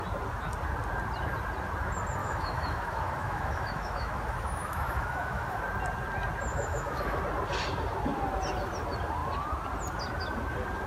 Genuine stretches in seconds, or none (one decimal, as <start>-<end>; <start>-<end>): 0.0-2.2; 5.6-6.5; 7.2-10.9